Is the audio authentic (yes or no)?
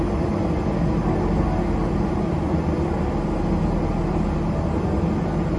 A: yes